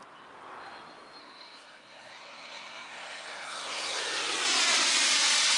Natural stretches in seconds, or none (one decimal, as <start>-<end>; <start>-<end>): 0.0-1.2; 4.0-5.6

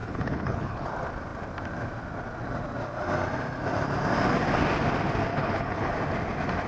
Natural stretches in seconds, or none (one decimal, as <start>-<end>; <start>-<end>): 0.9-5.3; 5.9-6.7

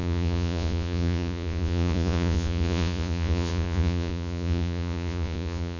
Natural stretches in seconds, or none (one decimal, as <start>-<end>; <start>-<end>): none

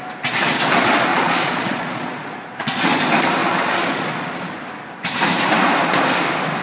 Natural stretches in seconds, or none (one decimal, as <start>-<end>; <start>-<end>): 0.0-1.1; 3.0-3.4; 4.6-6.6

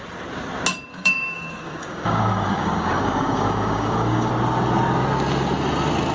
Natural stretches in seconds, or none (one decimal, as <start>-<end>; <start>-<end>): 0.0-0.9; 4.3-6.1